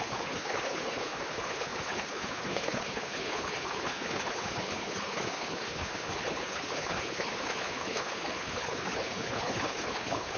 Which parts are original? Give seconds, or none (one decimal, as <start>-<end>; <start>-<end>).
none